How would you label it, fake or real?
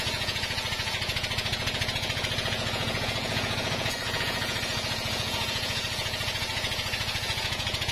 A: fake